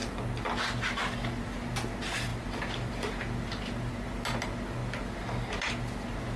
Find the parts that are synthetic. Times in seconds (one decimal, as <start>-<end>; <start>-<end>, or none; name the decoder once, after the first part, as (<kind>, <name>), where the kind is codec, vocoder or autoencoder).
none